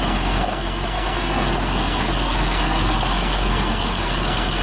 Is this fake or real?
fake